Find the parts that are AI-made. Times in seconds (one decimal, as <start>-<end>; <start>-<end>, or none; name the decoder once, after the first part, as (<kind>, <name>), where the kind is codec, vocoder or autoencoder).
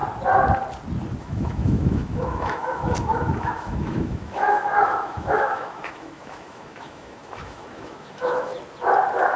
1.2-8.5 (autoencoder, DAC-VAE)